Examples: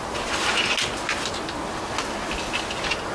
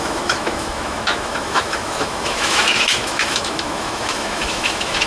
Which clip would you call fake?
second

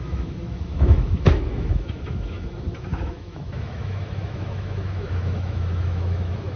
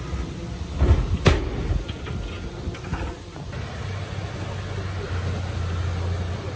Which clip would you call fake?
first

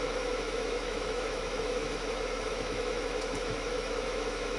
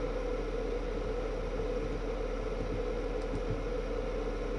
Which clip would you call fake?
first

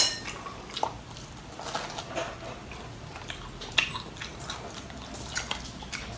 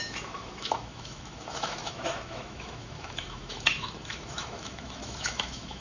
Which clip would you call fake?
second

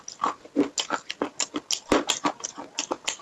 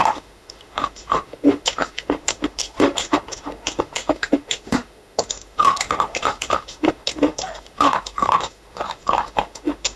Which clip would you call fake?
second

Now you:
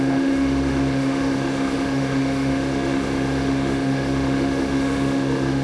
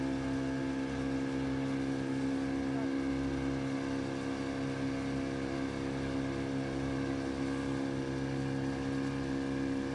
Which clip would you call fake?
first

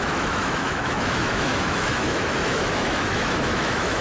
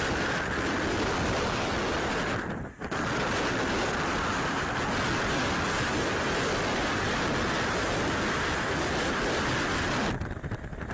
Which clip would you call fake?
first